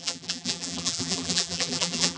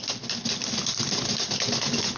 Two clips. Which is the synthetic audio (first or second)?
first